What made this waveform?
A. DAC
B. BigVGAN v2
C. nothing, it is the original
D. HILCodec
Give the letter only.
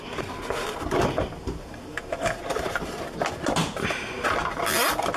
C